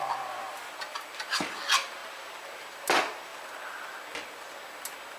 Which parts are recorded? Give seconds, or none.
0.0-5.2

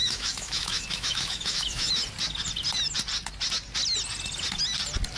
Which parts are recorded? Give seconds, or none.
1.9-5.2

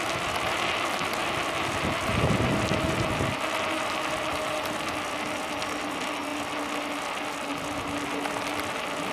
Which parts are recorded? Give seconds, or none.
0.0-9.1

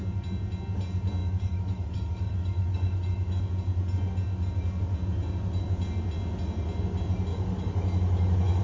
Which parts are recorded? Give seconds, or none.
0.0-1.2; 3.4-7.3

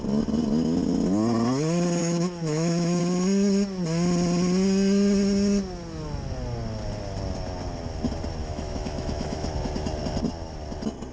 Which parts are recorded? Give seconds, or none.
0.0-2.0; 3.0-8.4; 9.5-11.1

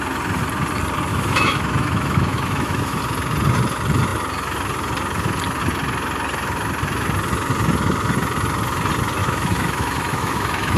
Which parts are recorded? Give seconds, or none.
0.0-1.1; 3.0-9.2

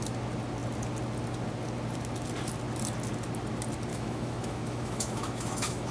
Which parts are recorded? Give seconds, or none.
0.0-3.9

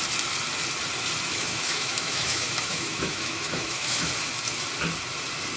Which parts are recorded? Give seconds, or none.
0.0-1.3; 4.1-5.6